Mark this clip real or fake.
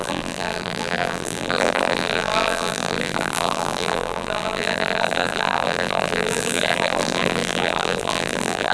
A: fake